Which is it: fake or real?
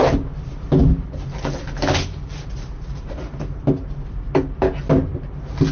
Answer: real